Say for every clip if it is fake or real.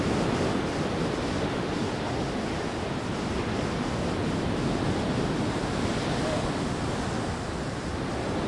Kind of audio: real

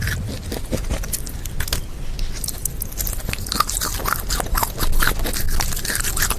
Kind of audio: real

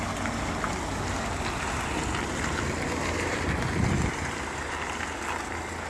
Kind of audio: fake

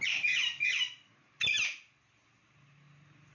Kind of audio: real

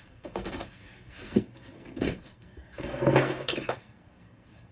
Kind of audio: fake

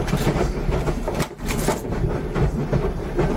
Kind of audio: fake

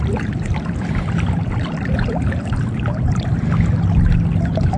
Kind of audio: real